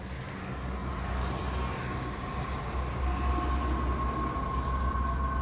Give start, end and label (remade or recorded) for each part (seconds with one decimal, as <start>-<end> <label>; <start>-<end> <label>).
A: 0.0-0.8 recorded; 0.8-1.4 remade; 1.4-5.4 recorded